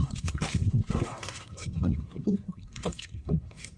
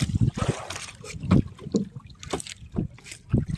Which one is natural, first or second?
second